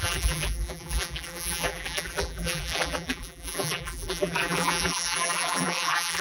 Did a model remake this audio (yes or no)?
yes